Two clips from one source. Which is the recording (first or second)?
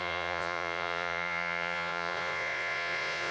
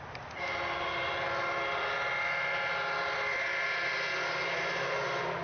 second